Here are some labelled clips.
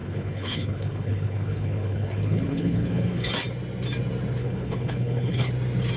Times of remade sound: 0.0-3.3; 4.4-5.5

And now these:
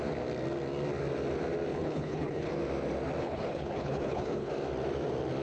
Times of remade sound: 1.7-2.5; 3.2-4.5

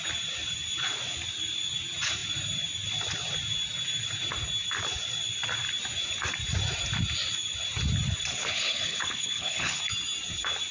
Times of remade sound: 8.4-9.8

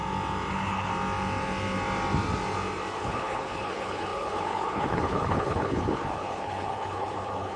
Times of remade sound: 0.5-0.9; 3.0-7.6

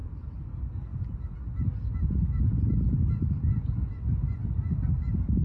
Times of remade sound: none

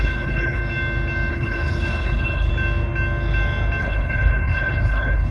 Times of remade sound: 0.0-0.6; 1.3-2.5; 3.8-5.3

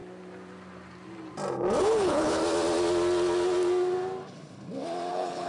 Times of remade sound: 1.8-2.4; 5.1-5.5